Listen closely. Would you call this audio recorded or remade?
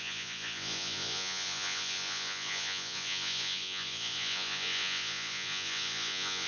remade